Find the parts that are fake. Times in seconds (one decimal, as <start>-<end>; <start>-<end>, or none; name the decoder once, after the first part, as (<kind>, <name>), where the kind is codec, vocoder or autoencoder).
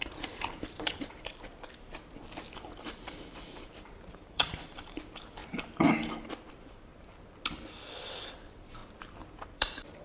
0.0-1.5 (vocoder, BigVGAN v2); 2.7-5.4; 6.5-6.9; 7.9-8.8; 9.5-10.0